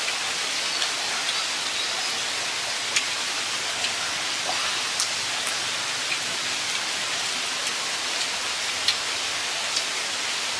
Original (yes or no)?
yes